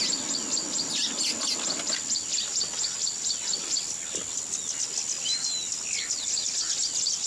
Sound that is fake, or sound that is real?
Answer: real